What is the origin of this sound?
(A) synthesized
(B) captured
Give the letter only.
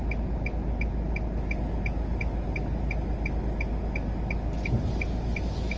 B